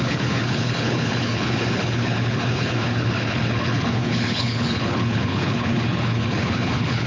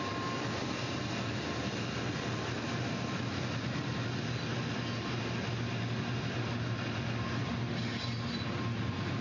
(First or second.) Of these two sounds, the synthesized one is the first